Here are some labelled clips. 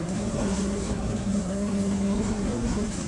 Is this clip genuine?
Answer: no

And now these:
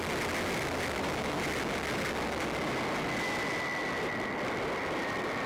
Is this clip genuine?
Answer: yes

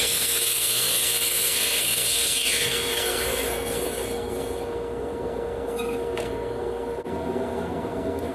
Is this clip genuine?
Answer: no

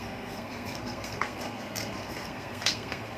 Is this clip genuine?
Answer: no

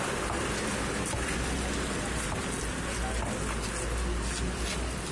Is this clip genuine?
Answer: yes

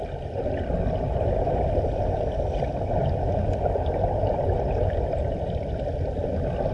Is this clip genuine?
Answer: yes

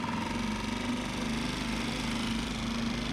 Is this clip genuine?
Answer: yes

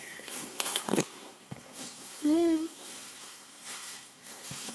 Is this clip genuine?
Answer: no